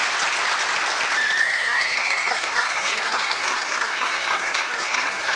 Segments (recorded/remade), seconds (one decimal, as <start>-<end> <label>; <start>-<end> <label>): 0.0-1.4 recorded; 1.4-5.4 remade